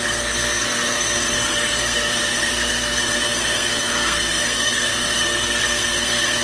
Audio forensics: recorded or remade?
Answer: remade